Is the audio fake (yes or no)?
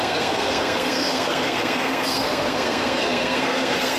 yes